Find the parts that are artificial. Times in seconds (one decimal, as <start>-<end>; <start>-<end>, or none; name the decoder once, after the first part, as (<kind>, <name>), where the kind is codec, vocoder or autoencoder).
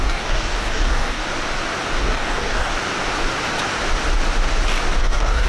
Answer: 0.0-1.2 (codec, DAC); 2.0-2.7; 5.0-5.5